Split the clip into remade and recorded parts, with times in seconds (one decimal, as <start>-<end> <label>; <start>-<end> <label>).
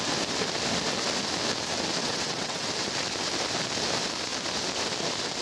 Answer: 0.0-2.0 recorded; 2.0-2.7 remade; 2.7-5.4 recorded